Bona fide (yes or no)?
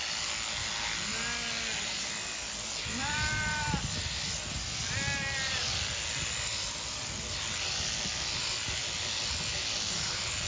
yes